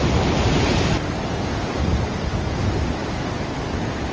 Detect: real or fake fake